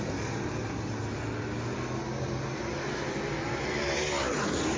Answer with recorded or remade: recorded